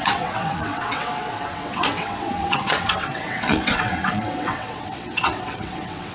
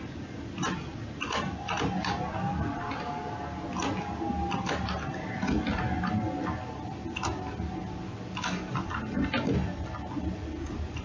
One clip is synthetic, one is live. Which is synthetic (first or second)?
first